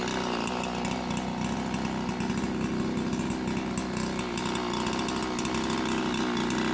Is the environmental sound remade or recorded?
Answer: recorded